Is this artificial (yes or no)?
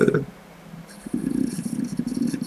no